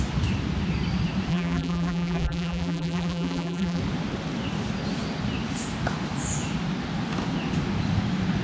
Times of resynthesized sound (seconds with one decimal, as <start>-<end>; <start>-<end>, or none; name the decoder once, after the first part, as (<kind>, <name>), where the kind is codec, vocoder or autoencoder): 1.3-3.8 (vocoder, BigVGAN v2)